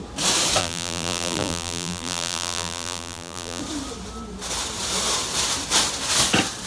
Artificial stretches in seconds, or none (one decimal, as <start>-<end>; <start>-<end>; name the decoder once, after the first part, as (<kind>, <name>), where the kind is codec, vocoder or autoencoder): 0.6-3.6 (vocoder, BigVGAN v2)